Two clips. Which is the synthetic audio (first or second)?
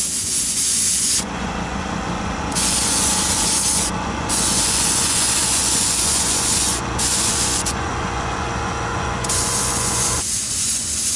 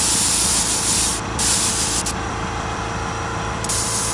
first